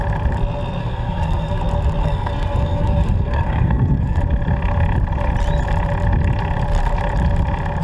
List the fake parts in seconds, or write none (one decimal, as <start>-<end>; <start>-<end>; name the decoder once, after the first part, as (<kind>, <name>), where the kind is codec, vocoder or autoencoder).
0.8-1.6 (codec, SNAC); 2.0-4.2